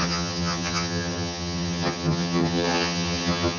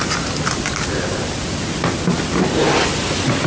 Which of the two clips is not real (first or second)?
first